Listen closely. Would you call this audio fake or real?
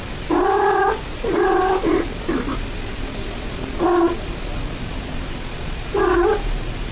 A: real